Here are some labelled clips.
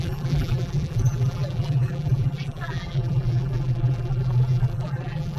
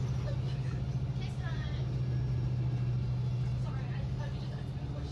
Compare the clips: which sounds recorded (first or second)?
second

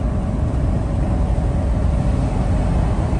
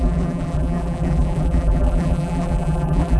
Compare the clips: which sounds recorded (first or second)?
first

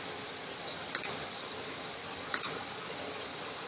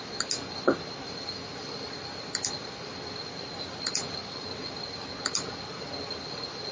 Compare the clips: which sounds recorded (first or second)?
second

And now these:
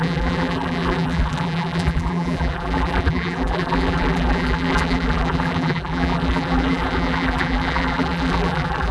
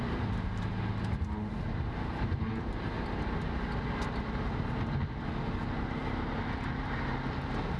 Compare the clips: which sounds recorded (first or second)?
second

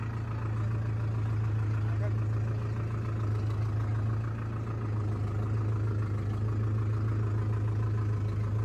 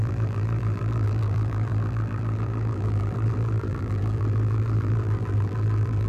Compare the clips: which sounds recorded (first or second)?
first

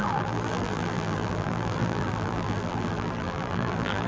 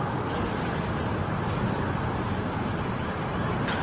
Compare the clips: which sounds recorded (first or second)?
second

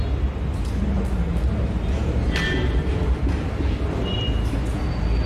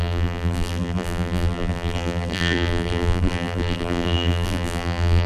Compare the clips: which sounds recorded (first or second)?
first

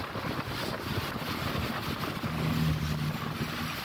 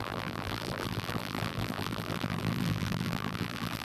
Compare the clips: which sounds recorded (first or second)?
first